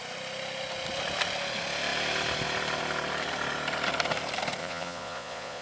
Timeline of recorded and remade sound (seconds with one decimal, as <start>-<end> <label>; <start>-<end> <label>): 0.0-4.6 recorded; 4.6-5.6 remade